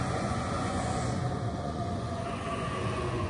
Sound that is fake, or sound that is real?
fake